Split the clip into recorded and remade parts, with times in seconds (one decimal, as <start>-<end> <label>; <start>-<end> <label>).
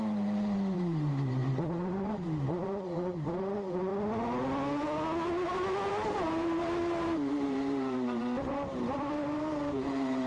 0.0-3.9 remade; 3.9-5.9 recorded; 5.9-10.3 remade